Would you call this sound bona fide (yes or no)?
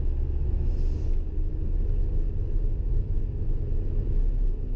yes